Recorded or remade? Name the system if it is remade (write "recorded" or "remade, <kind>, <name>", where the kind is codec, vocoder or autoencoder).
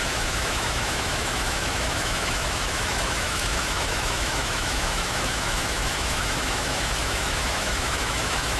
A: remade, autoencoder, DAC-VAE